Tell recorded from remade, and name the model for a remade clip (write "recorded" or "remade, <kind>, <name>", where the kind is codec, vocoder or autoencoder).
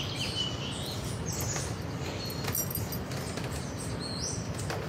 recorded